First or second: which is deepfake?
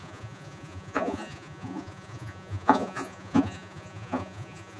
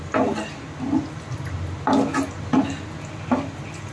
first